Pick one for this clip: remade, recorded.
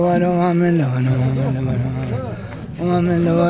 recorded